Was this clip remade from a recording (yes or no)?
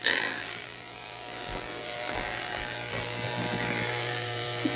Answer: yes